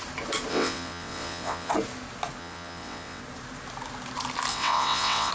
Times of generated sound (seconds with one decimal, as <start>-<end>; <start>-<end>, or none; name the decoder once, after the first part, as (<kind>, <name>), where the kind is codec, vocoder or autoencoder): 0.5-1.7 (vocoder, WaveNeXt); 2.4-3.2; 4.5-5.3